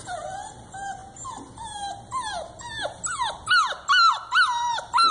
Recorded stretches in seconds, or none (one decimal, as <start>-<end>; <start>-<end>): 0.0-5.1